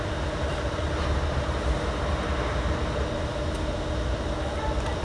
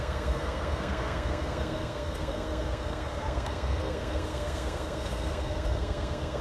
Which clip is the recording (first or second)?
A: first